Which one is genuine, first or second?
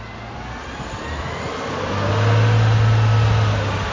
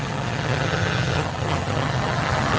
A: first